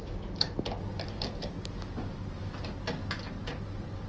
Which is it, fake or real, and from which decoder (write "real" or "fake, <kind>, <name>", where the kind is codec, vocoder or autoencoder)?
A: real